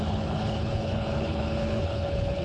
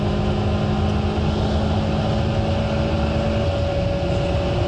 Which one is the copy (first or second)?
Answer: first